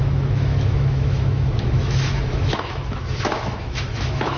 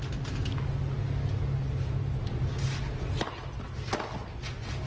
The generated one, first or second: first